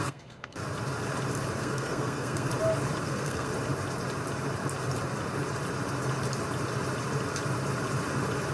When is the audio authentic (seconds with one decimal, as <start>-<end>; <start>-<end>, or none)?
0.6-1.6; 2.5-3.0; 3.5-8.5